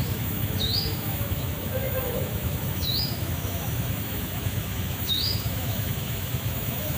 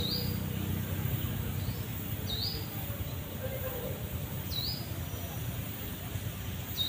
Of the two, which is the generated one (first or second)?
first